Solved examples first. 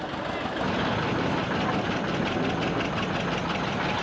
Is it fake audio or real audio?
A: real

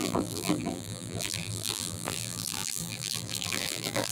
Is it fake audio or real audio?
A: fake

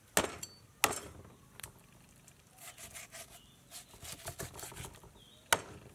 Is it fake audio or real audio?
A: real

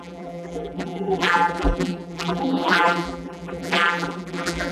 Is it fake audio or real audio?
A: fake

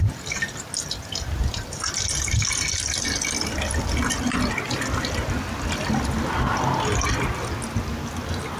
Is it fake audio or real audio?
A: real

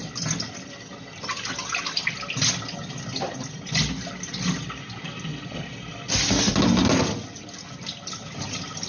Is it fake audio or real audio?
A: real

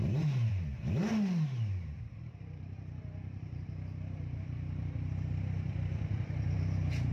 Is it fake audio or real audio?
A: fake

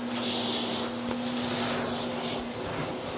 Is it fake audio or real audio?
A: real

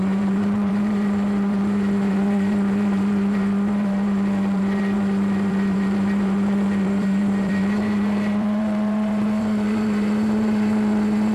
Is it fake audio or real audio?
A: fake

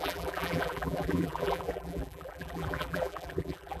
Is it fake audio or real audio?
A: fake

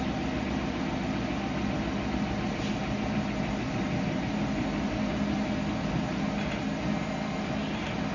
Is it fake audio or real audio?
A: real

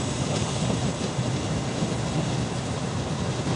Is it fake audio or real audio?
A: fake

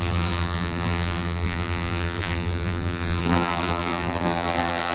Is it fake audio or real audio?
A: fake